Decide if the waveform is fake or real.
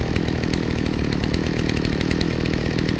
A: fake